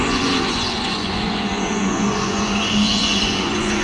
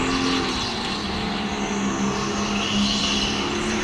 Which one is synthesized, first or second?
first